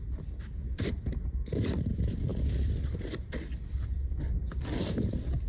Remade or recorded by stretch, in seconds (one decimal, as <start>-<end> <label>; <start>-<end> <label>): 0.0-5.5 remade